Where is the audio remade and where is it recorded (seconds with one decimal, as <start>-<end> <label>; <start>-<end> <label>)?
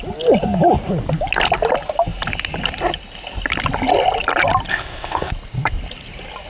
0.0-4.7 recorded; 4.7-5.3 remade; 5.3-6.5 recorded